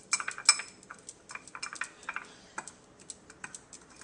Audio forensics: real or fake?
real